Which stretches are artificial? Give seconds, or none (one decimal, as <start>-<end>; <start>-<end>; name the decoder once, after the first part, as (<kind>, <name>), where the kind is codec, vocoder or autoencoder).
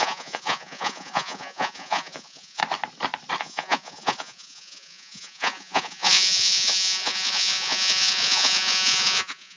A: 0.0-2.6 (vocoder, Vocos); 3.4-9.6